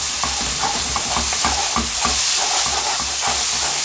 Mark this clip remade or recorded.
recorded